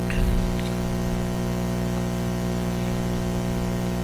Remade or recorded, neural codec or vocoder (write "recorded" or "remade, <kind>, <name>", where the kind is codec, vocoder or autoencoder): recorded